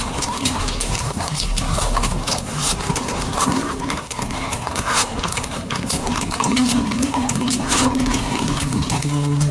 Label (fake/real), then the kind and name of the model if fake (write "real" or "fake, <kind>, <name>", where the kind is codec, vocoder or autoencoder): fake, codec, SNAC